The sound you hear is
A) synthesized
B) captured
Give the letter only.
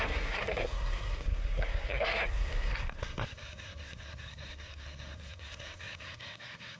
A